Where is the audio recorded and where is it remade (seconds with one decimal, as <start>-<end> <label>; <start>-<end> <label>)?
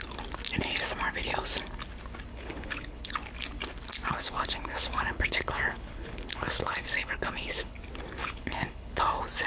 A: 0.0-2.3 recorded; 2.3-3.1 remade; 3.1-4.1 recorded; 4.1-7.8 remade; 7.8-8.2 recorded; 8.2-9.0 remade; 9.0-9.5 recorded